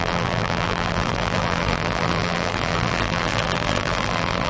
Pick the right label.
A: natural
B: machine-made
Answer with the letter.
B